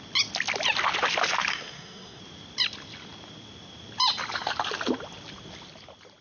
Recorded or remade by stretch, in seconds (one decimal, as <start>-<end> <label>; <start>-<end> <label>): 0.0-1.5 recorded; 1.5-2.2 remade; 2.2-6.2 recorded